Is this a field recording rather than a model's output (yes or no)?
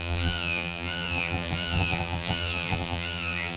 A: no